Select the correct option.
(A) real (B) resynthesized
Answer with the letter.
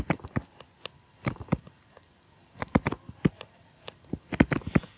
A